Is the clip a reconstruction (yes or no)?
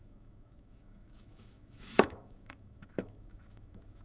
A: yes